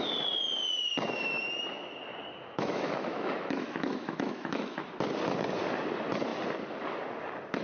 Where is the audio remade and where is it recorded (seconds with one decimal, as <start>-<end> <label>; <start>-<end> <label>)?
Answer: 0.0-2.3 recorded; 2.3-4.8 remade; 4.8-7.6 recorded